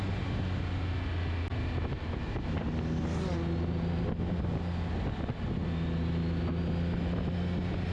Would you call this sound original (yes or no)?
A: yes